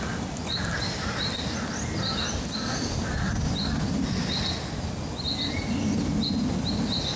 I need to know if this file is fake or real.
real